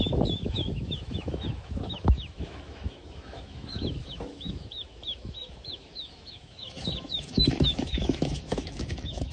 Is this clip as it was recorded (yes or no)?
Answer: no